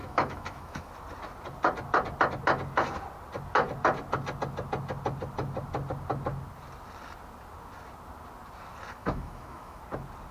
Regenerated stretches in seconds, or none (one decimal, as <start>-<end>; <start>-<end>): 0.0-0.9; 9.0-9.8